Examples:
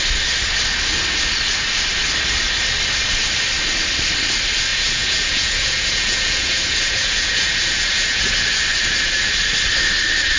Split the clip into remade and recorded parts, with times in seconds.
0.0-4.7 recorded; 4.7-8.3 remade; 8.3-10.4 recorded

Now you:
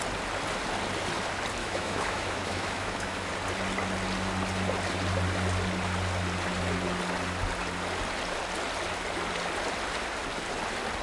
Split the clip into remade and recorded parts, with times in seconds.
0.0-1.6 recorded; 1.6-3.3 remade; 3.3-11.0 recorded